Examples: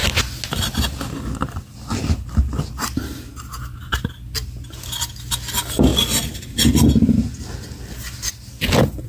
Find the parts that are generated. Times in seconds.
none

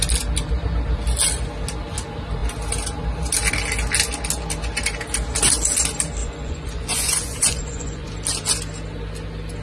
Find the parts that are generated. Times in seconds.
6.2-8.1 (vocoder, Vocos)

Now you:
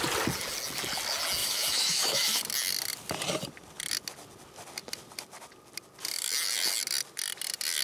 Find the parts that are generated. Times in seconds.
1.4-2.4 (autoencoder, DAC-VAE)

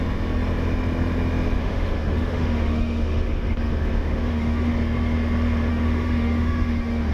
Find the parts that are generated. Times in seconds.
1.6-4.7 (autoencoder, DAC-VAE); 5.7-7.1

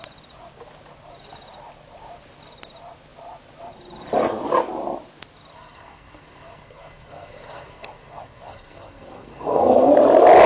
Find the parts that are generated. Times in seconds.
5.5-9.9 (codec, SNAC)